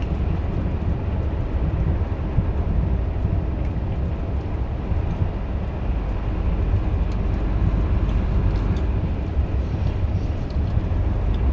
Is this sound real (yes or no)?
yes